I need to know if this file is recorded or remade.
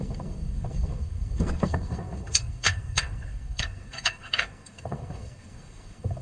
remade